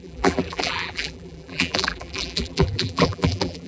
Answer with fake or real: fake